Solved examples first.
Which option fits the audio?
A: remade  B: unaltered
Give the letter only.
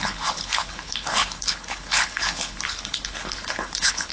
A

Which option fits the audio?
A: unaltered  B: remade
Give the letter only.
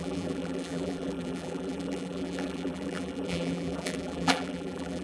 B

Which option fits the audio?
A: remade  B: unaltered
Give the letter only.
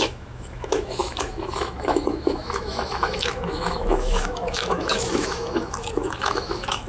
A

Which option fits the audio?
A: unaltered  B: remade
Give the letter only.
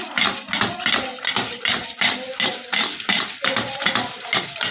A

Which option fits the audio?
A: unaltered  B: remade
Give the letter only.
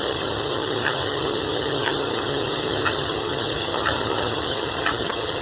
B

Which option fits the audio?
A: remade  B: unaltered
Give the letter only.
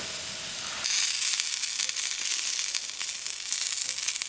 B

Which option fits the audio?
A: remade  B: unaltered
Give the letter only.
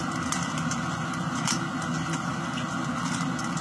B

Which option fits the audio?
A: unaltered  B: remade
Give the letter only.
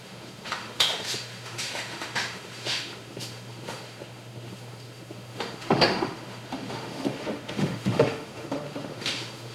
B